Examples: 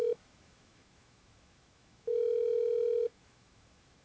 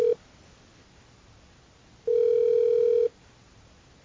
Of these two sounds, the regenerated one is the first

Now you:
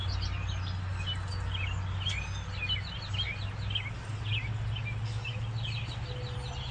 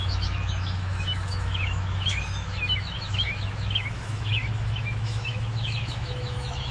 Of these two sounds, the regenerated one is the second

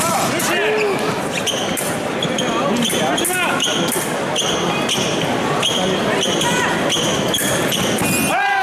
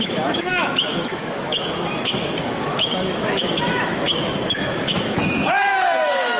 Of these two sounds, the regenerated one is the second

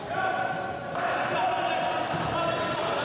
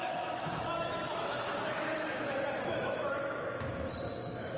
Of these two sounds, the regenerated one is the second